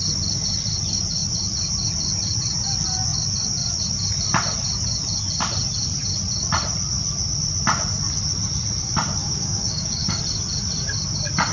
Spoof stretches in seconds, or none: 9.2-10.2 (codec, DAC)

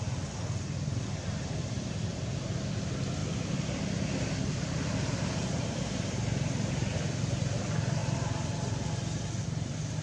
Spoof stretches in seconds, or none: none

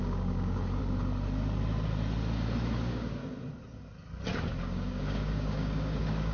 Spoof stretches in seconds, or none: 0.0-0.8 (codec, DAC); 2.8-3.2; 4.6-6.3

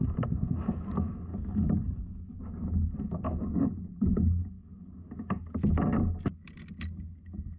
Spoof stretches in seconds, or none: 1.3-2.4 (codec, DAC); 4.4-5.1